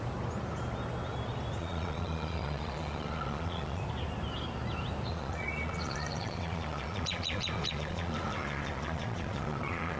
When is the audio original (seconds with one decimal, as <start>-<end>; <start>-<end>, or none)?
0.0-1.6; 3.8-5.1